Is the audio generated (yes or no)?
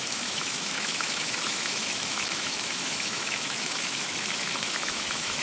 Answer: yes